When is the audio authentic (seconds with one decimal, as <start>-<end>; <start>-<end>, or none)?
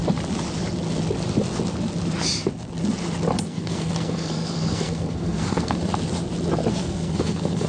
0.0-3.4; 5.8-6.7